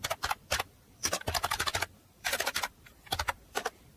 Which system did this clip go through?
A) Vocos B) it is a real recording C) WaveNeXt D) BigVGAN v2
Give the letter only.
D